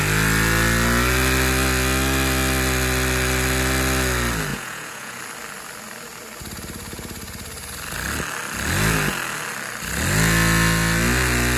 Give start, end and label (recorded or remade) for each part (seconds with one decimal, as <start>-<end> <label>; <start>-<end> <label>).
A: 0.0-4.5 recorded; 4.5-5.2 remade; 5.2-11.6 recorded

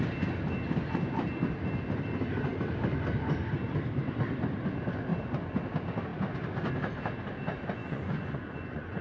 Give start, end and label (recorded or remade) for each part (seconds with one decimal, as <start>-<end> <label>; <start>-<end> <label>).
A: 0.0-5.1 recorded; 5.1-5.6 remade; 5.6-7.8 recorded; 7.8-9.0 remade

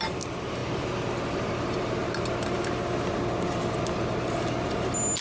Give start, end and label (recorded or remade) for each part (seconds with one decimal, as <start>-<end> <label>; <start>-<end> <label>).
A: 0.0-5.2 recorded

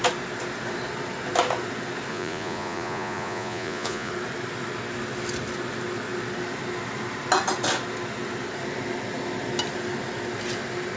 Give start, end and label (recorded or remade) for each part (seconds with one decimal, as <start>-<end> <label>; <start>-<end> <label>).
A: 0.0-2.1 recorded; 2.1-4.1 remade; 4.1-11.0 recorded

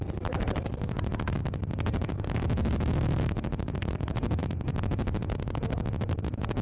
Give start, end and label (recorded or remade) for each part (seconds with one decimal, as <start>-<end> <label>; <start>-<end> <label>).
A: 0.0-6.6 recorded

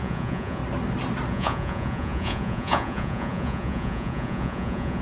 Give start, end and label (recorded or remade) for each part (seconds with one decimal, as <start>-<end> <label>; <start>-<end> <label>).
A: 0.0-0.6 remade; 0.6-1.3 recorded; 1.3-5.0 remade

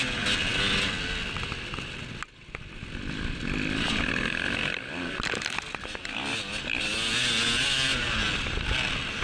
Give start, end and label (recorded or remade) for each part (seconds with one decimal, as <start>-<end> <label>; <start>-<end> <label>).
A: 0.0-9.2 recorded